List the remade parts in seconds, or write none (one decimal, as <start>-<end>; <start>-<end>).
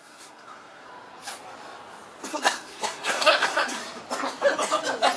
0.0-0.9; 2.3-3.8